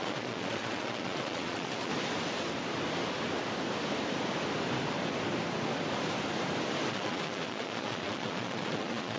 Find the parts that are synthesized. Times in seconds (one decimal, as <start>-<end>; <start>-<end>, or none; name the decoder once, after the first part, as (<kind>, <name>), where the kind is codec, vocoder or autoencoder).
0.0-1.9 (vocoder, Vocos); 6.9-9.2